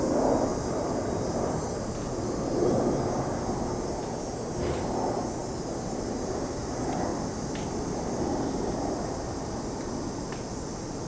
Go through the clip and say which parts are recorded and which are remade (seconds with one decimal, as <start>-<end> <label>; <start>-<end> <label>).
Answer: 0.0-0.5 recorded; 0.5-1.7 remade; 1.7-5.4 recorded; 5.4-6.6 remade; 6.6-7.1 recorded; 7.1-10.1 remade; 10.1-11.1 recorded